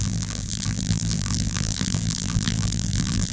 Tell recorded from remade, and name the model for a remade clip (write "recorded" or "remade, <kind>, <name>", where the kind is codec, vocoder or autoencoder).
remade, vocoder, BigVGAN v2